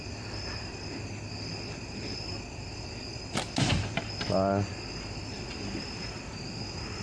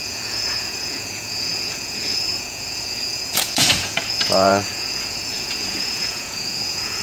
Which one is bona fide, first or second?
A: first